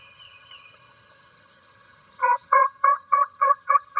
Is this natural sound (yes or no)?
no